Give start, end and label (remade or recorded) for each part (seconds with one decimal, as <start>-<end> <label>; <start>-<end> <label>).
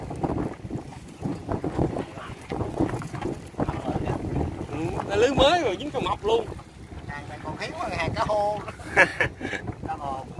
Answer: 0.0-0.9 recorded; 0.9-3.4 remade; 3.4-9.1 recorded; 9.1-9.6 remade; 9.6-10.4 recorded